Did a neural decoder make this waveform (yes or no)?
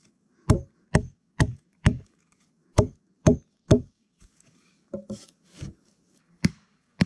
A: yes